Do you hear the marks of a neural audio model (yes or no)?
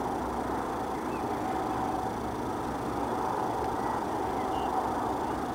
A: no